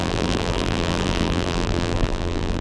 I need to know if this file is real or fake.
fake